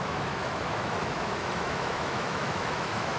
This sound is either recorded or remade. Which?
remade